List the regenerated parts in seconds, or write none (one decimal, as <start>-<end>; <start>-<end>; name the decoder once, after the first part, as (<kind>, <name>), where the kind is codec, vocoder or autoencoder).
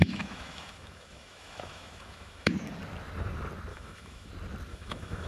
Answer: 0.0-2.5 (autoencoder, DAC-VAE); 3.7-4.3; 4.7-5.3